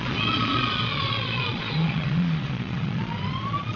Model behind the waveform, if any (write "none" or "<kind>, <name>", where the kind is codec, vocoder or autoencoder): vocoder, Vocos